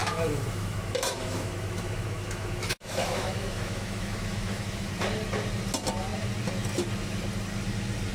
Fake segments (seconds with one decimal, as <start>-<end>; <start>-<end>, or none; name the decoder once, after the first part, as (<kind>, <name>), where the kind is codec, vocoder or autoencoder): 0.0-4.9 (autoencoder, DAC-VAE)